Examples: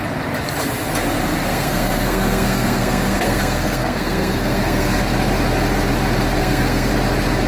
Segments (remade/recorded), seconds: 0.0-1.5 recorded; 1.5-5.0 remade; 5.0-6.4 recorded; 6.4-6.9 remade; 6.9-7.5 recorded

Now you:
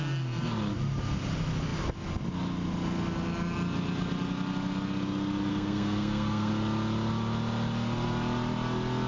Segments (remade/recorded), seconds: 0.0-5.5 recorded; 5.5-6.5 remade; 6.5-9.1 recorded

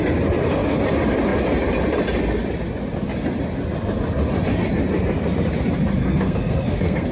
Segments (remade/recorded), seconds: 0.0-6.0 recorded; 6.0-7.1 remade

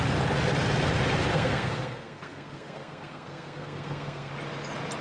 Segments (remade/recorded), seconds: 0.0-1.3 recorded; 1.3-4.3 remade; 4.3-5.0 recorded